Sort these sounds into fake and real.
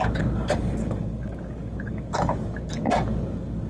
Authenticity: fake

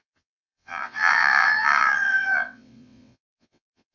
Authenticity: fake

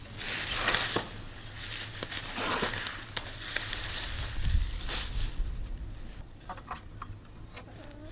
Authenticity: real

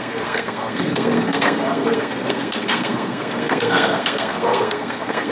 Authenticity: fake